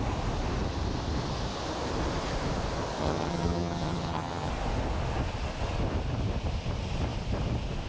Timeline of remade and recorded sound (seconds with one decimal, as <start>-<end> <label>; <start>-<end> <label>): 0.0-3.0 recorded; 3.0-4.5 remade; 4.5-7.9 recorded